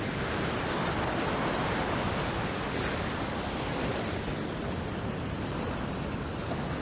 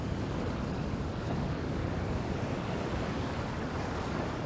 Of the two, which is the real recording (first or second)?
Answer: first